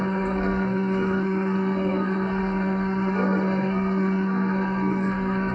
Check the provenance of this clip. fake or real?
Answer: fake